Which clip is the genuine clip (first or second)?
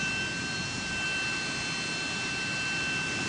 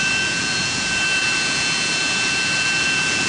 first